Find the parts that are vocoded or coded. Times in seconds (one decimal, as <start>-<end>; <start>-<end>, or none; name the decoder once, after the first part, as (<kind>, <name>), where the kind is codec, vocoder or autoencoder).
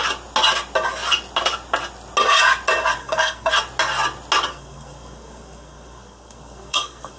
3.0-3.5 (codec, SNAC); 4.5-7.2